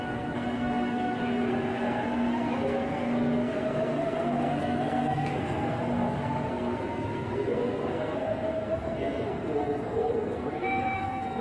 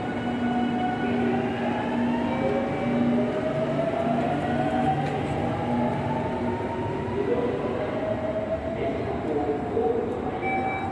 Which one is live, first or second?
second